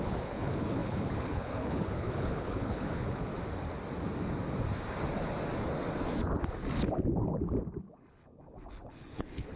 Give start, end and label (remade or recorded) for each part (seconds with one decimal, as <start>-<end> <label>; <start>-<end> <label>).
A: 0.0-3.3 remade; 3.3-7.8 recorded; 7.8-9.6 remade